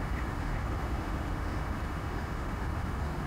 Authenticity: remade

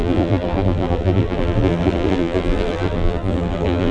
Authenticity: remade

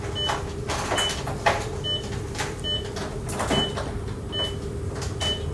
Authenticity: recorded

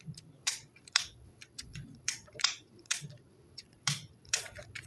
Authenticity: remade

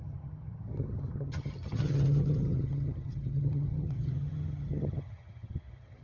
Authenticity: remade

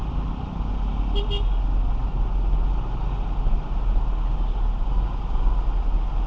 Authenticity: recorded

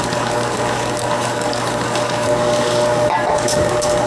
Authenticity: remade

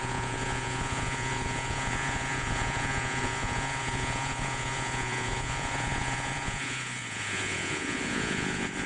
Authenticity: remade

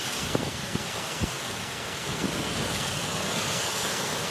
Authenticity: remade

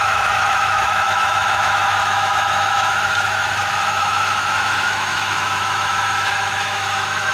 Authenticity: remade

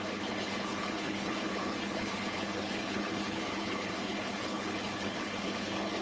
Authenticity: remade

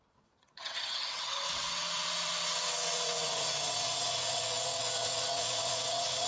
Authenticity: remade